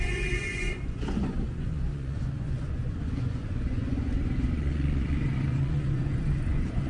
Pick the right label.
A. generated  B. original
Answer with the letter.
A